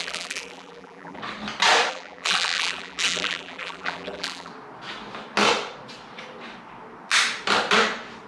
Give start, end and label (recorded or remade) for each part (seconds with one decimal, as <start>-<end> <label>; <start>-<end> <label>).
0.0-1.2 remade; 1.2-1.9 recorded; 1.9-4.5 remade; 4.5-8.3 recorded